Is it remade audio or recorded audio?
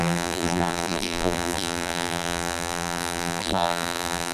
remade